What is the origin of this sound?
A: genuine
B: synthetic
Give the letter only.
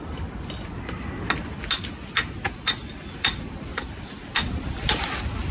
A